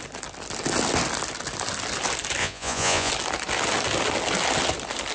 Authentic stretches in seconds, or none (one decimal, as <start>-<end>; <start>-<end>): 0.0-2.4; 3.1-5.1